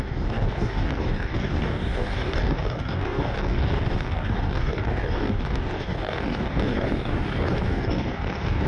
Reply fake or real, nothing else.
fake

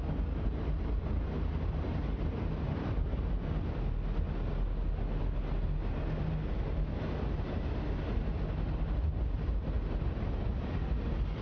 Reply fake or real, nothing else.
real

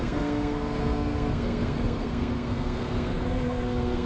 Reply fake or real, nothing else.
fake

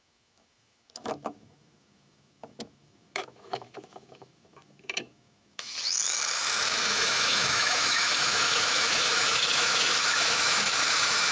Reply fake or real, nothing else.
fake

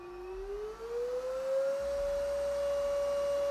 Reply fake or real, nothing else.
real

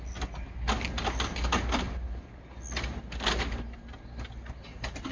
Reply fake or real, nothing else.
real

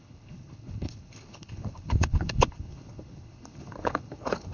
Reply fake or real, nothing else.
fake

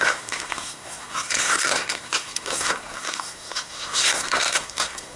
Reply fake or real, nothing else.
fake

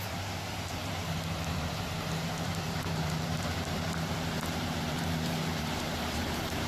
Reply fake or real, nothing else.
fake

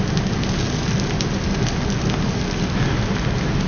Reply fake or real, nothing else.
real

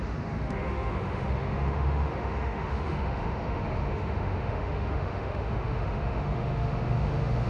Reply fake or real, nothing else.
fake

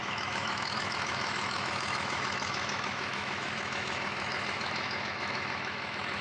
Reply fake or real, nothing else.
fake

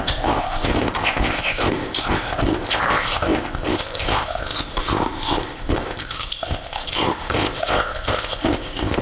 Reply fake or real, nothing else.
fake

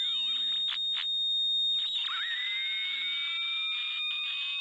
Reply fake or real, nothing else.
real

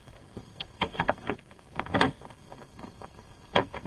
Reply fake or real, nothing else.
fake